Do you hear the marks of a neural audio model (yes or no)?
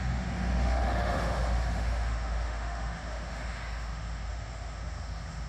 yes